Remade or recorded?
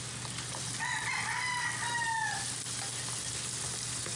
recorded